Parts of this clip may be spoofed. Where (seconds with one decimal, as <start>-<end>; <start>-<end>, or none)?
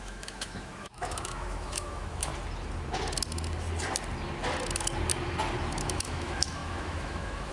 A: 0.0-2.3; 5.8-7.5